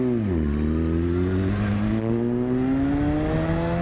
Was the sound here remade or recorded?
recorded